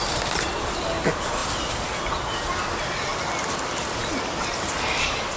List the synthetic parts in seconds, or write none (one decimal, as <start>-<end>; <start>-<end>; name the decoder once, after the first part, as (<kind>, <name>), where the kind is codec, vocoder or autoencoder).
none